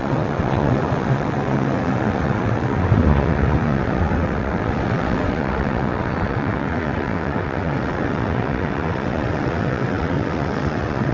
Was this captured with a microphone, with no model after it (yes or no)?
no